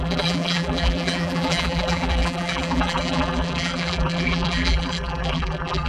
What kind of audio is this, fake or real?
fake